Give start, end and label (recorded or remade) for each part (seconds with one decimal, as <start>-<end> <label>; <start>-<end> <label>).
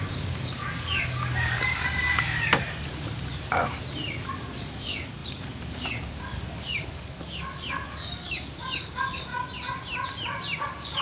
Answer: 0.0-1.8 remade; 1.8-4.3 recorded; 4.3-9.3 remade; 9.3-10.6 recorded; 10.6-11.0 remade